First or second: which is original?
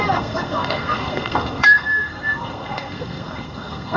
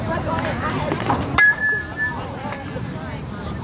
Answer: second